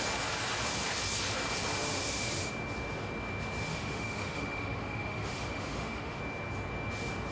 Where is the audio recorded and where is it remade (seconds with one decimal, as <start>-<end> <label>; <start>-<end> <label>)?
0.0-1.7 recorded; 1.7-2.5 remade; 2.5-3.7 recorded; 3.7-6.2 remade; 6.2-7.3 recorded